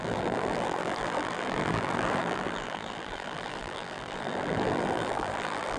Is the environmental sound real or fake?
fake